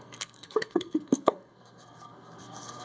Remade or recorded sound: remade